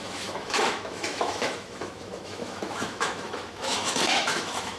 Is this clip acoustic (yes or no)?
no